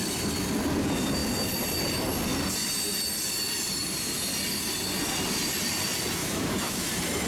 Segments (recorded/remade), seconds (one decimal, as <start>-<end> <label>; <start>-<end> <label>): 0.0-6.2 recorded; 6.2-6.8 remade; 6.8-7.3 recorded